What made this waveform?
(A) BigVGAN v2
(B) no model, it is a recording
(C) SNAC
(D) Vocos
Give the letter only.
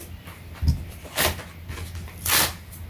B